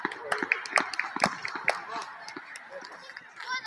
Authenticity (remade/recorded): recorded